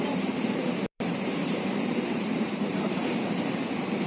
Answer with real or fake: fake